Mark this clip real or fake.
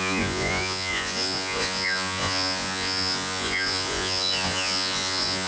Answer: fake